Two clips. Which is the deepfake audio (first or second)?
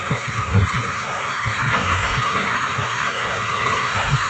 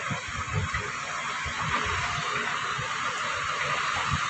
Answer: first